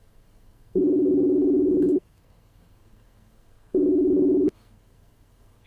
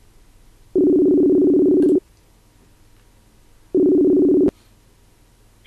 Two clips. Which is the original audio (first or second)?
second